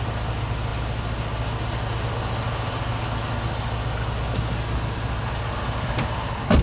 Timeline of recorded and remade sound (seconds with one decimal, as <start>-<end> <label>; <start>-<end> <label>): 0.0-6.6 recorded